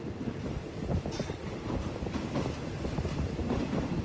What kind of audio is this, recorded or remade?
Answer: remade